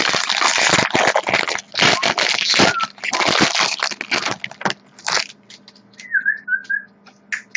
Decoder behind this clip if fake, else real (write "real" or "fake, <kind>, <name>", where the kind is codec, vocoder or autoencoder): real